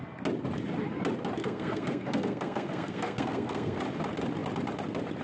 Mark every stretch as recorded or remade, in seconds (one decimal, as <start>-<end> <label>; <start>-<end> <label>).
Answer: 0.0-1.4 recorded; 1.4-3.8 remade; 3.8-5.2 recorded